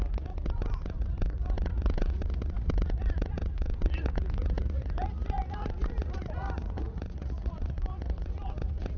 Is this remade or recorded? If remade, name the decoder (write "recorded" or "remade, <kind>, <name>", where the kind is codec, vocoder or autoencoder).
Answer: remade, vocoder, Vocos